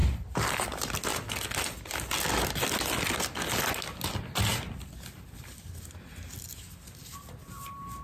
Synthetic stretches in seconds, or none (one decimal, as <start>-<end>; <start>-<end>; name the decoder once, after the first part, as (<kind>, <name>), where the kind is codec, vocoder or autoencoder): 0.0-0.5 (vocoder, BigVGAN v2)